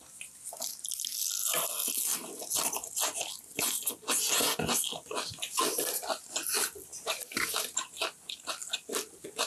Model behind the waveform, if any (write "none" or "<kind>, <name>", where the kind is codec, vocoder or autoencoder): none